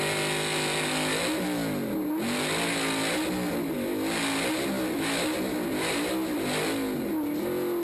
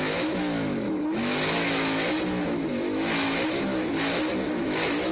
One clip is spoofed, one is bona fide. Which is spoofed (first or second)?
second